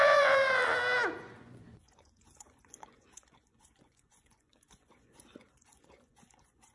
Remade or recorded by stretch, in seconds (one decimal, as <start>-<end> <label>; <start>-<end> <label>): 0.0-0.6 remade; 0.6-1.2 recorded; 1.2-6.7 remade